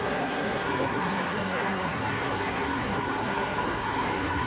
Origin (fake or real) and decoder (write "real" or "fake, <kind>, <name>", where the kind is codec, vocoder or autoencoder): fake, codec, SNAC